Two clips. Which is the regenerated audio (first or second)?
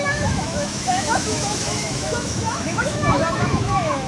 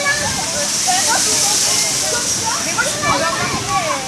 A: first